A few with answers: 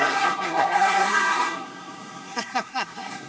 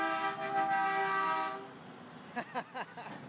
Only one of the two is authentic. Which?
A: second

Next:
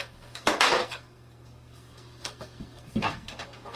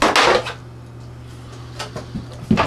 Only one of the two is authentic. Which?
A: second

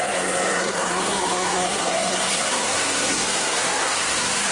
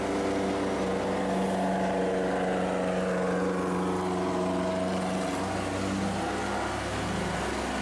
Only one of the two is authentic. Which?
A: second